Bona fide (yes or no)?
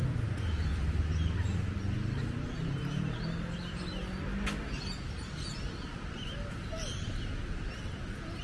yes